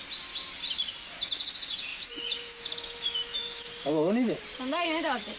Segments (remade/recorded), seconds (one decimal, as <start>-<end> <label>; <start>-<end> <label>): 0.0-1.9 recorded; 1.9-4.4 remade; 4.4-5.4 recorded